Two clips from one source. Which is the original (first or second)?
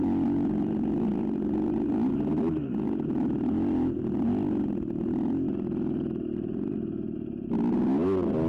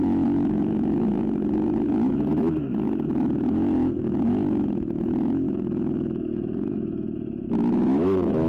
first